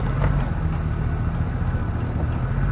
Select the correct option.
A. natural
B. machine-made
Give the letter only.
A